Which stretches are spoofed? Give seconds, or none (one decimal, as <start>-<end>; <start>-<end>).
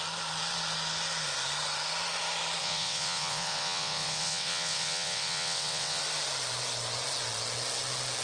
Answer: 2.6-6.0